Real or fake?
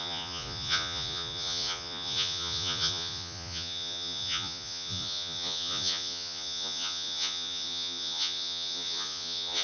fake